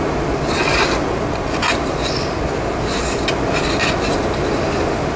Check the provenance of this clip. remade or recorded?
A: recorded